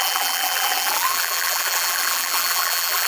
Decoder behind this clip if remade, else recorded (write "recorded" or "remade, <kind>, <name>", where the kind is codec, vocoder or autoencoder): remade, vocoder, BigVGAN v2